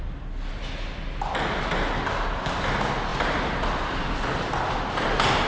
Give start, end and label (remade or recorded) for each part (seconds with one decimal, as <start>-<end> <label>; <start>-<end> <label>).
0.0-3.1 recorded; 3.1-4.8 remade; 4.8-5.5 recorded

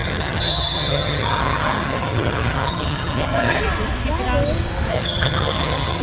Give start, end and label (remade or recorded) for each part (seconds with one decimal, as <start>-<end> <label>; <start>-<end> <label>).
0.0-3.6 remade; 3.6-4.9 recorded; 4.9-6.0 remade

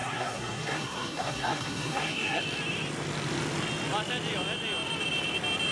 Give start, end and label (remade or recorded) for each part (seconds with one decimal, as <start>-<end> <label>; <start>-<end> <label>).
0.0-2.4 remade; 2.4-5.7 recorded

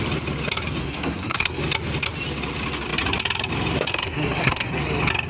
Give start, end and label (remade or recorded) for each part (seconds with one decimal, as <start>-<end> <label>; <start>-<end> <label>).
0.0-0.8 recorded; 0.8-1.6 remade; 1.6-3.9 recorded; 3.9-4.7 remade; 4.7-5.3 recorded

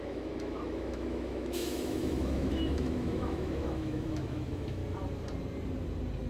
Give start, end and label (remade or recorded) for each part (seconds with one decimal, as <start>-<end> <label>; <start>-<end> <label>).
0.0-4.8 remade; 4.8-6.3 recorded

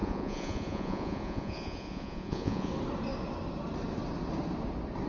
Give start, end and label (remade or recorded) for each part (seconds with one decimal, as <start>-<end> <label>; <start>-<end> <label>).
0.0-2.7 remade; 2.7-5.1 recorded

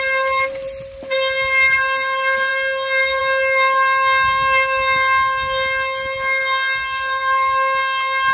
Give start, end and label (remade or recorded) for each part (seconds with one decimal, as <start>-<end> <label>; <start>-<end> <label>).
0.0-8.3 recorded

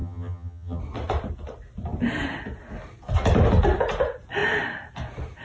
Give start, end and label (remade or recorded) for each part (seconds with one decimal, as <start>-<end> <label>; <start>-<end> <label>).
0.0-0.8 remade; 0.8-5.4 recorded